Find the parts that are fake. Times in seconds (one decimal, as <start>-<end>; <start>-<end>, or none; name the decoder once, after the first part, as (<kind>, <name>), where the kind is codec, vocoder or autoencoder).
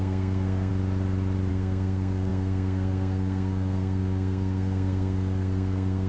0.0-0.7 (codec, SNAC); 1.5-6.1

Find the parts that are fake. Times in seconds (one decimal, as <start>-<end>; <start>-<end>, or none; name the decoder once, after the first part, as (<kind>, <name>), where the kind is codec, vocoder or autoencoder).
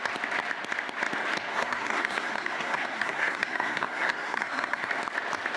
1.5-4.9 (codec, SNAC)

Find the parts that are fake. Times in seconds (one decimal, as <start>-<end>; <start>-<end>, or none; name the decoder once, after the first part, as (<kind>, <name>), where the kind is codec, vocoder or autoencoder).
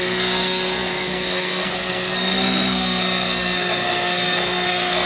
0.0-5.1 (codec, SNAC)